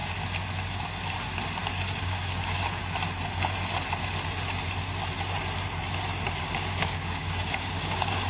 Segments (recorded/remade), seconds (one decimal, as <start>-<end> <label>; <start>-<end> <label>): 0.0-2.0 recorded; 2.0-2.8 remade; 2.8-6.4 recorded; 6.4-8.3 remade